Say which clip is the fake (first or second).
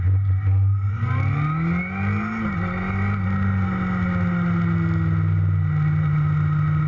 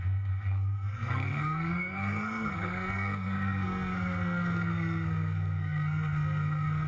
second